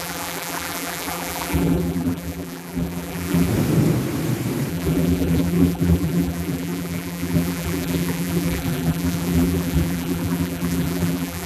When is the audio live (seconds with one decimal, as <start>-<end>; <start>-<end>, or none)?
3.5-4.7